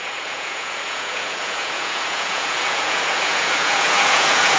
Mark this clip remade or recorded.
remade